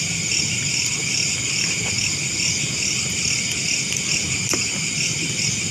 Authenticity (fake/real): real